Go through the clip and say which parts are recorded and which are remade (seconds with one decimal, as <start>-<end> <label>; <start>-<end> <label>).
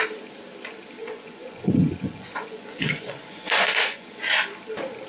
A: 0.0-1.0 recorded; 1.0-4.1 remade; 4.1-5.1 recorded